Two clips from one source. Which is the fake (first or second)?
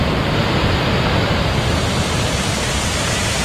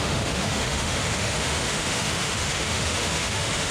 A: second